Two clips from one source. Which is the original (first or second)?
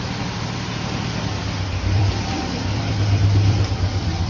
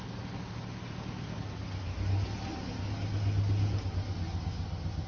second